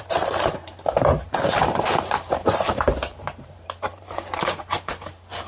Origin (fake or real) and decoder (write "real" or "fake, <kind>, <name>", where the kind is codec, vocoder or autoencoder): fake, vocoder, BigVGAN v2